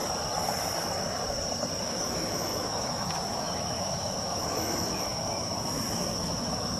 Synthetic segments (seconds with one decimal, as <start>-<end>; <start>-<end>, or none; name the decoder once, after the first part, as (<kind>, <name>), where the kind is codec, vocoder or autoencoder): 1.8-5.5 (autoencoder, DAC-VAE); 6.2-6.8